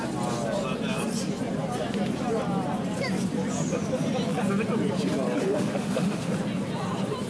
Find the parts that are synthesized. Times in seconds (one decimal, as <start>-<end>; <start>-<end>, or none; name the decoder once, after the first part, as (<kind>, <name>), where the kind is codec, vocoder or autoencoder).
5.4-6.3 (autoencoder, DAC-VAE)